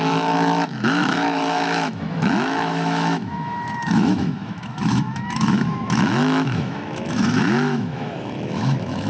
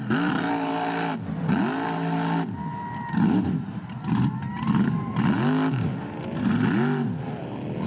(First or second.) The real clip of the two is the second